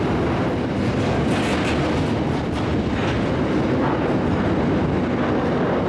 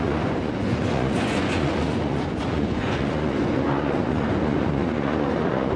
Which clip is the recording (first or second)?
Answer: first